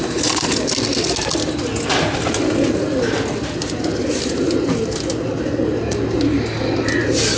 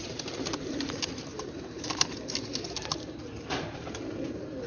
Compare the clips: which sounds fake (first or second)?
second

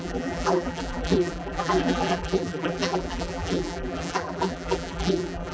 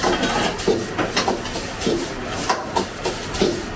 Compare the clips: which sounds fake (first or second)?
first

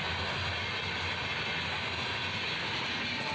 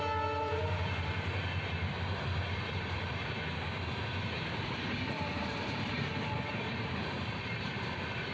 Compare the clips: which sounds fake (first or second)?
second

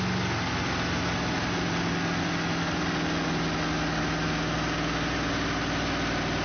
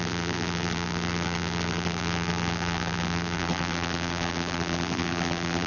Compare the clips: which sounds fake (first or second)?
second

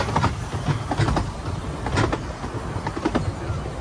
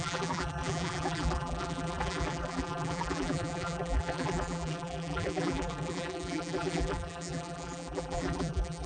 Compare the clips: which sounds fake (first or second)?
second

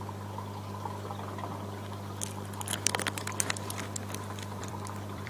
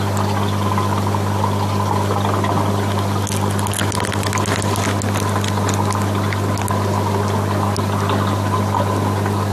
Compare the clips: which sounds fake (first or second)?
first